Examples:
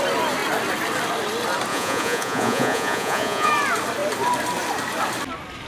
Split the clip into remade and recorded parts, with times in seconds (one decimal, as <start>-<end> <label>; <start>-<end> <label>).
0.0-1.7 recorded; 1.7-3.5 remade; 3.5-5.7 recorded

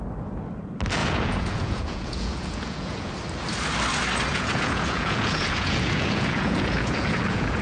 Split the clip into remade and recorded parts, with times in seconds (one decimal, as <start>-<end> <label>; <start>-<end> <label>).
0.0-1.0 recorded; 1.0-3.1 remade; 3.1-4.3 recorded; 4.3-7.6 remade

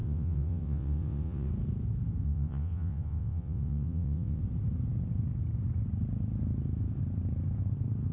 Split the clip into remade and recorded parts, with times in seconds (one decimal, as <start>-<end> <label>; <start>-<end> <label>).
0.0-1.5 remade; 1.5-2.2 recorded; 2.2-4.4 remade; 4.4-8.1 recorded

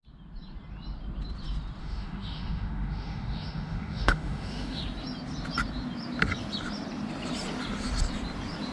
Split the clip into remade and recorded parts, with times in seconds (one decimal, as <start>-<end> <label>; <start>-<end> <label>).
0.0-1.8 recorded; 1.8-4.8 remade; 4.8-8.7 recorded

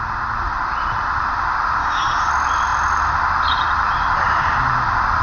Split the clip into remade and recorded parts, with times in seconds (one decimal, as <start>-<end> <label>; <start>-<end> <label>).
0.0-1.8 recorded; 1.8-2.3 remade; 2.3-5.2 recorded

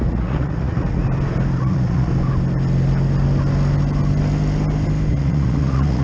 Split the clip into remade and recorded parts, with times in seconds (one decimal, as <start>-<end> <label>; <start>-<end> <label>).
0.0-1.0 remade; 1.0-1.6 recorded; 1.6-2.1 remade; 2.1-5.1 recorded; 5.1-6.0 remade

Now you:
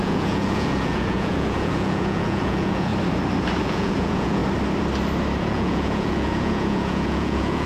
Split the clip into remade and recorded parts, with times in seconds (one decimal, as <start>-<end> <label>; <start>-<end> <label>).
0.0-2.9 remade; 2.9-3.6 recorded; 3.6-4.4 remade; 4.4-5.4 recorded; 5.4-7.7 remade

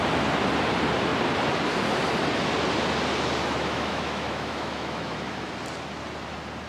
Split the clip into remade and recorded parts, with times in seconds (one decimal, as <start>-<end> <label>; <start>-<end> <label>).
0.0-3.4 recorded; 3.4-5.5 remade; 5.5-6.7 recorded